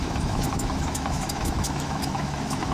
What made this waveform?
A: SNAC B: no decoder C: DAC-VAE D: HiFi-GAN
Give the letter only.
C